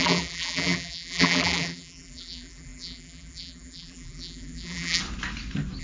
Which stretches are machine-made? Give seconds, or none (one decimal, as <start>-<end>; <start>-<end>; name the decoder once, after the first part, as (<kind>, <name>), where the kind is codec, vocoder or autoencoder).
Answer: 0.0-5.0 (vocoder, BigVGAN v2)